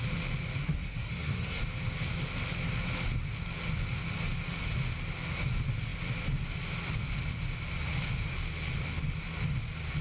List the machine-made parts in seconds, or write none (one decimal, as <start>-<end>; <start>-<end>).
0.6-1.6